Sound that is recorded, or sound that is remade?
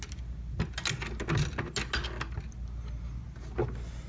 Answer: recorded